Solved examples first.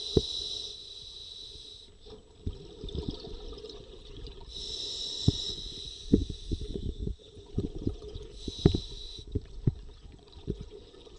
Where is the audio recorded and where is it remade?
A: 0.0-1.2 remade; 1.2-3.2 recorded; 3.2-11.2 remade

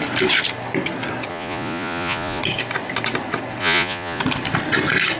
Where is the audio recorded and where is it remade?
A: 0.0-1.3 recorded; 1.3-2.4 remade; 2.4-3.6 recorded; 3.6-4.2 remade; 4.2-5.2 recorded

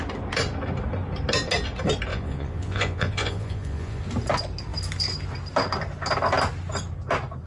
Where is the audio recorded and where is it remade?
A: 0.0-2.1 recorded; 2.1-4.0 remade; 4.0-7.5 recorded

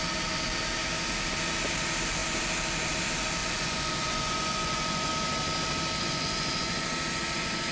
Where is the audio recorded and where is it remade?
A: 0.0-3.4 recorded; 3.4-5.1 remade; 5.1-6.0 recorded; 6.0-6.9 remade; 6.9-7.7 recorded

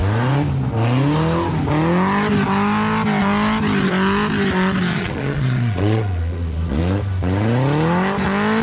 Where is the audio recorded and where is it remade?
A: 0.0-4.9 recorded; 4.9-6.8 remade; 6.8-8.6 recorded

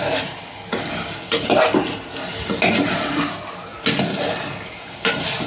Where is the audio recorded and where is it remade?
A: 0.0-5.5 recorded

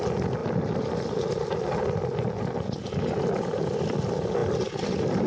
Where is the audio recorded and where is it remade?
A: 0.0-5.3 recorded

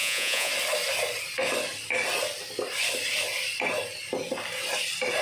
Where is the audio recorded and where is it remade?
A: 0.0-0.5 remade; 0.5-5.2 recorded